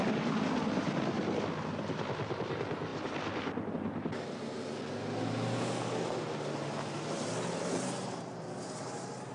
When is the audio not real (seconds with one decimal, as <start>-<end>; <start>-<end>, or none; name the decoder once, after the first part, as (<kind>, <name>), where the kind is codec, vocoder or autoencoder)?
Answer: 2.9-3.7 (vocoder, BigVGAN v2)